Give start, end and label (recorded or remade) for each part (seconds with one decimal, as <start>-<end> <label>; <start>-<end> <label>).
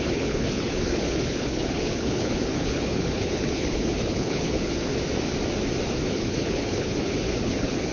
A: 0.0-4.9 remade; 4.9-6.1 recorded; 6.1-7.9 remade